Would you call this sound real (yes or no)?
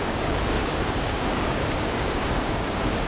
no